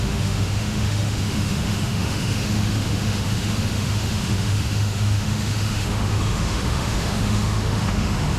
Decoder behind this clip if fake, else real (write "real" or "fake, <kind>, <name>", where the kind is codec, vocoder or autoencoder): fake, autoencoder, DAC-VAE